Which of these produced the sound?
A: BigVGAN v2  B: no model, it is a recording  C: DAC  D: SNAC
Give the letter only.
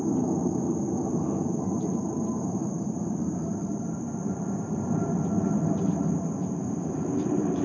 A